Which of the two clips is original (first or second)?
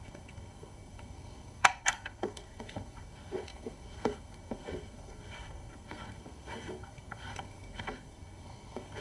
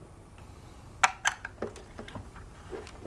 second